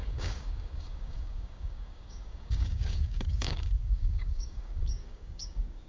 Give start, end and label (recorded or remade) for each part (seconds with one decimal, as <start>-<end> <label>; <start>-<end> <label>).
0.0-5.9 remade